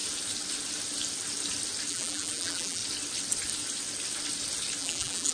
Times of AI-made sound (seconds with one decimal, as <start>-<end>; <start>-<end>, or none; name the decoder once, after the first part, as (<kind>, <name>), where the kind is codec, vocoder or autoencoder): 1.9-2.8 (vocoder, BigVGAN v2); 4.8-5.3